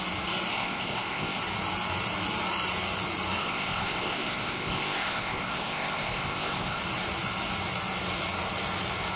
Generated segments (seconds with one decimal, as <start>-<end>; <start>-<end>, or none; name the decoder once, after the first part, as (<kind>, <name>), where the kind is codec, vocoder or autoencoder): 0.5-1.4 (codec, ZipCodec); 3.4-6.8